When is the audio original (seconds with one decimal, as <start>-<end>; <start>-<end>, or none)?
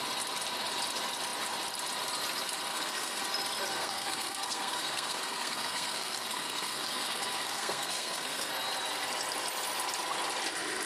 0.0-2.7; 3.2-3.7; 8.5-10.9